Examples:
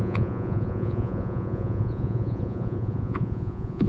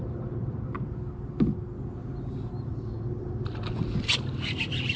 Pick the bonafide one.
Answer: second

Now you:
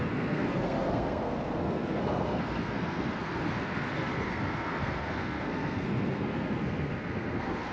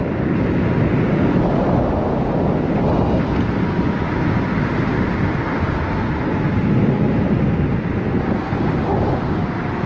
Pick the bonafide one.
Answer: second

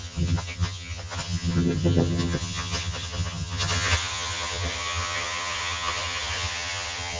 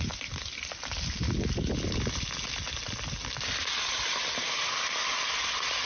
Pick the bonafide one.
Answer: second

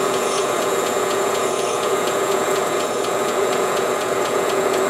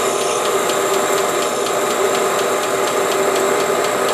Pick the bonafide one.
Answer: second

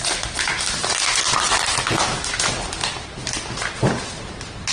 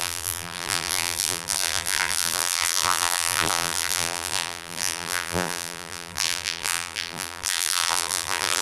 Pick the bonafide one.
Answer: first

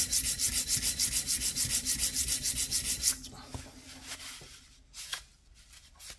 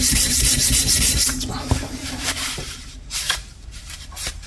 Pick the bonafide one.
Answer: first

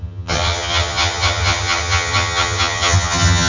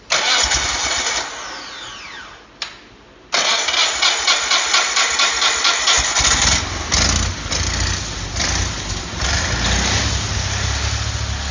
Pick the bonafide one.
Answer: second